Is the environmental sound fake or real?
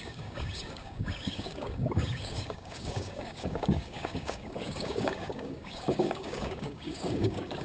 fake